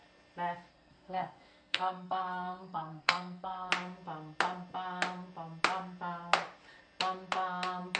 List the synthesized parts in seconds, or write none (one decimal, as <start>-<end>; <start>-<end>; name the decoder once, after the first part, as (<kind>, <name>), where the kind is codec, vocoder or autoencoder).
0.7-3.7 (codec, SNAC)